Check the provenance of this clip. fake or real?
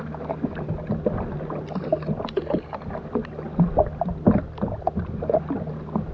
real